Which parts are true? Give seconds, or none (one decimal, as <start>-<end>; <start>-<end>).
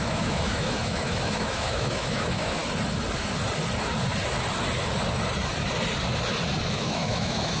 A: 2.6-6.7